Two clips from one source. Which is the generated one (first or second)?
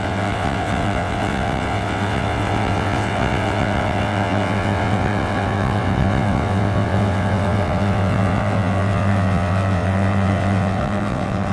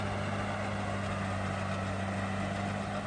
first